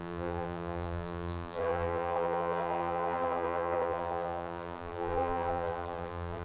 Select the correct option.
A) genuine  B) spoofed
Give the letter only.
B